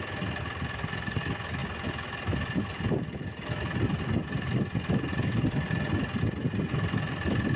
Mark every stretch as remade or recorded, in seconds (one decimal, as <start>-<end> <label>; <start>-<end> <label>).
0.0-7.6 recorded